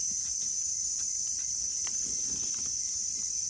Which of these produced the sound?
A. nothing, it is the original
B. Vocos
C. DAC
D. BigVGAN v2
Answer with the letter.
A